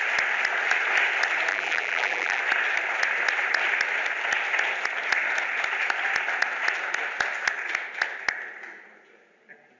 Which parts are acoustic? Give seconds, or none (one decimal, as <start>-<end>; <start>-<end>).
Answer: 0.0-1.5; 2.4-9.8